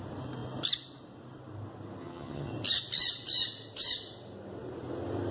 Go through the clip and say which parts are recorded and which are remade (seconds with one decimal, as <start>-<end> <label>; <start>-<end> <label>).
0.0-2.0 recorded; 2.0-2.5 remade; 2.5-5.3 recorded